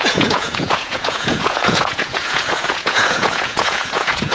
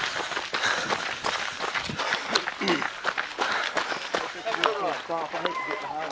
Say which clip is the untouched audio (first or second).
second